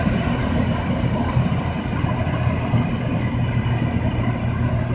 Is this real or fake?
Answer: real